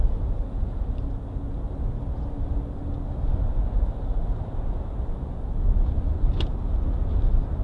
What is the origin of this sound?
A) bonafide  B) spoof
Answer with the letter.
A